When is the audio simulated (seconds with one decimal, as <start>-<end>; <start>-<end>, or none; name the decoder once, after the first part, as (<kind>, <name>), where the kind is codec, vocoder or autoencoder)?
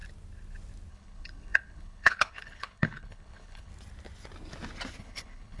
0.9-3.7 (codec, HILCodec); 5.0-5.6